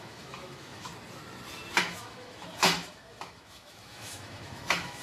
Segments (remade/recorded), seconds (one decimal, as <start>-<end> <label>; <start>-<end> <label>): 0.0-0.9 remade; 0.9-1.8 recorded; 1.8-5.0 remade